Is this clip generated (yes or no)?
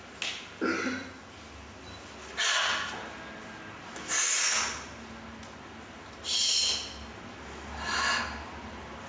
no